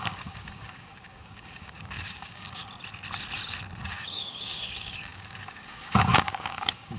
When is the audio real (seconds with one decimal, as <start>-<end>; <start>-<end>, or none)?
2.6-3.8